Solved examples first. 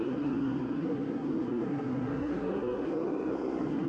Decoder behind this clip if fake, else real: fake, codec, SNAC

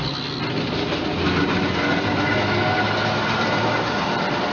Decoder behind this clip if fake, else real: real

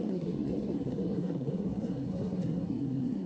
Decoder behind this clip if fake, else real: fake, codec, SNAC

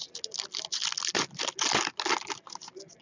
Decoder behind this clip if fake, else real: real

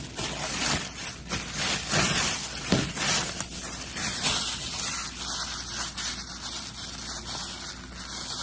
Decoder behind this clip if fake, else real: real